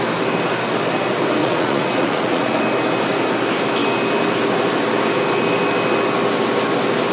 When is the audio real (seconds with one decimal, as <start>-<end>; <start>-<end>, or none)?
0.0-1.4; 2.6-7.1